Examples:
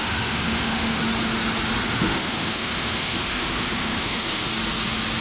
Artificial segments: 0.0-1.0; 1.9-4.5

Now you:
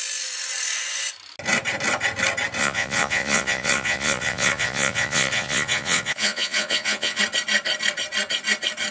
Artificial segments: 2.6-7.2

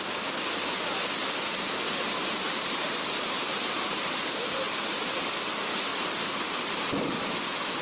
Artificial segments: 1.2-4.6; 5.9-7.1